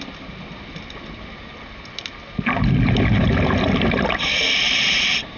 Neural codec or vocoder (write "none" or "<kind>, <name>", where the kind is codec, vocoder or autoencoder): none